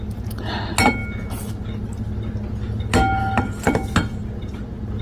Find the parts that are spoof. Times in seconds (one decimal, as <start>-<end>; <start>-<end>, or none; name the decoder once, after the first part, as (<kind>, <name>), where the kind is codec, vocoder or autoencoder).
none

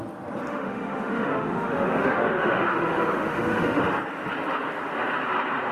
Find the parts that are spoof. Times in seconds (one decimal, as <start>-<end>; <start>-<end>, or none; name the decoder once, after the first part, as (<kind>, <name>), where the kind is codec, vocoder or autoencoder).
0.5-3.8 (autoencoder, DAC-VAE)

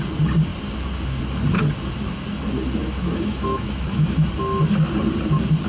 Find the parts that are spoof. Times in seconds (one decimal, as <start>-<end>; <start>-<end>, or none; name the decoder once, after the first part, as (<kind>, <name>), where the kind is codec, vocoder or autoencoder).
2.8-4.3 (autoencoder, DAC-VAE)

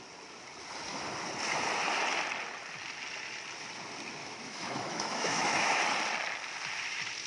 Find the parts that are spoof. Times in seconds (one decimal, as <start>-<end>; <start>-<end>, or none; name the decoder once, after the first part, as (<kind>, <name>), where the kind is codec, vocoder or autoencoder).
4.2-5.8 (autoencoder, DAC-VAE)

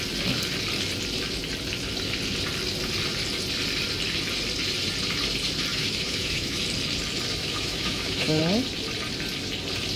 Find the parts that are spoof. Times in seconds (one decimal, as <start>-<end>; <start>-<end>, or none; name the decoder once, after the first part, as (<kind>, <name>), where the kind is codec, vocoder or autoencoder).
5.7-6.6 (autoencoder, DAC-VAE); 7.4-8.4

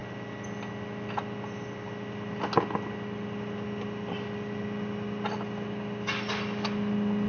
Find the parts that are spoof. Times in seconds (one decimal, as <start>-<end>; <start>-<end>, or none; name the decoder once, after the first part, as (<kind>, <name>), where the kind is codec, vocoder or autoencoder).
none